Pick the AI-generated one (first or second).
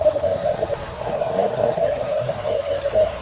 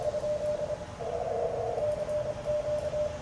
first